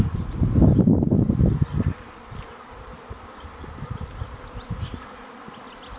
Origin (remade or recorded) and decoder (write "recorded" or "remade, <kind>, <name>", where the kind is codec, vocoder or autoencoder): recorded